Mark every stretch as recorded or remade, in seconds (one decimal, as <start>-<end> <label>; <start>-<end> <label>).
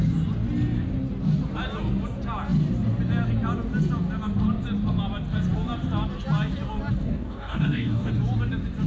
0.0-7.0 recorded; 7.0-8.1 remade; 8.1-8.9 recorded